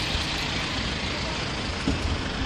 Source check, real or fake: real